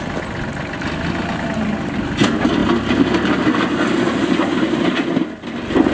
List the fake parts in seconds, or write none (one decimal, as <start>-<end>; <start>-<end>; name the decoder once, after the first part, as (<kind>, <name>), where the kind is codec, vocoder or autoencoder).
none